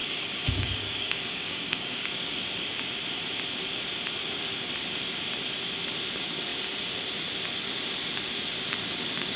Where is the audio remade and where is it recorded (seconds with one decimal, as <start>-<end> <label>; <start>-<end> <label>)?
0.0-2.4 remade; 2.4-4.2 recorded; 4.2-4.7 remade; 4.7-9.4 recorded

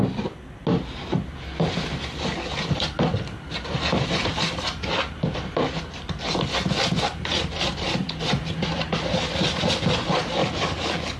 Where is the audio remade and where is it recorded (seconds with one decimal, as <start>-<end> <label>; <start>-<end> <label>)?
0.0-10.4 recorded; 10.4-11.2 remade

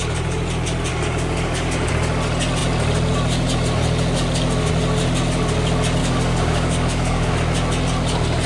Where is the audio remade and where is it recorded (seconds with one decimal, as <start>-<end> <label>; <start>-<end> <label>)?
0.0-0.9 recorded; 0.9-1.9 remade; 1.9-6.0 recorded; 6.0-7.3 remade; 7.3-8.5 recorded